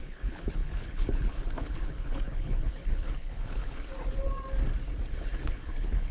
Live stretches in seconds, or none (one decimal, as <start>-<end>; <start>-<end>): 3.9-5.1